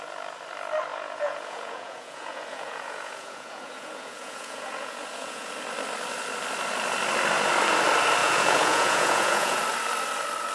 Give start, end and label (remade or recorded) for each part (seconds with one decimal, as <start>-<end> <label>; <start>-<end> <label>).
0.0-0.9 recorded; 0.9-5.5 remade; 5.5-8.2 recorded; 8.2-9.6 remade; 9.6-10.5 recorded